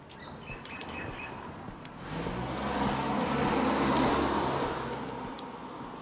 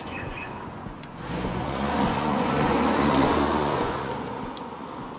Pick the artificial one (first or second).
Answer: second